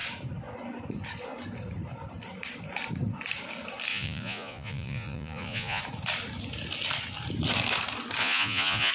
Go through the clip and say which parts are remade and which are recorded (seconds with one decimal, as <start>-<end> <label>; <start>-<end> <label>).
0.0-3.9 recorded; 3.9-5.8 remade; 5.8-8.2 recorded; 8.2-8.9 remade